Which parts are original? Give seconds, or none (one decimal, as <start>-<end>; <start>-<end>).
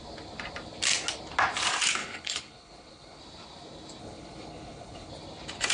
0.0-2.0; 3.2-4.0; 5.1-5.7